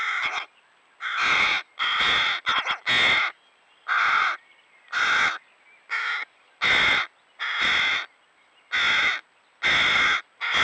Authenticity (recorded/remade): recorded